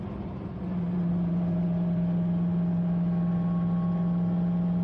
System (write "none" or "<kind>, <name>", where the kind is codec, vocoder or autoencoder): none